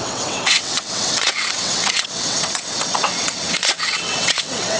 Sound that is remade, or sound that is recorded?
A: remade